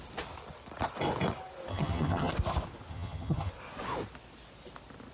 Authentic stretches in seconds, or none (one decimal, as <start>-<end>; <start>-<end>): 0.0-1.7; 2.3-2.9; 3.5-5.1